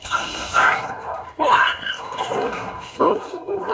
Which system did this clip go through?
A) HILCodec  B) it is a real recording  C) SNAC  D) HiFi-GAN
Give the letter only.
C